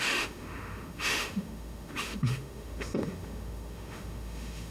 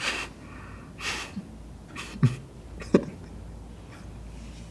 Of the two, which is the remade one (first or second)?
first